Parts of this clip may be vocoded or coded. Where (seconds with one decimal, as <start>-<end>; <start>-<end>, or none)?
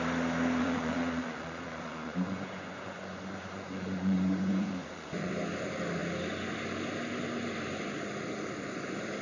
0.6-5.3